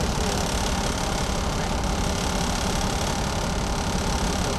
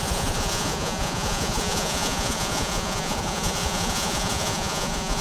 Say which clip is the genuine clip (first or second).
first